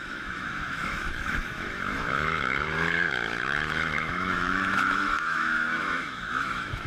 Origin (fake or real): fake